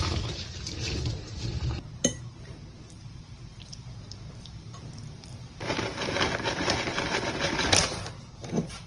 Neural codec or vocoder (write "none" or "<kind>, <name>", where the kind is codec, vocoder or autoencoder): vocoder, BigVGAN v2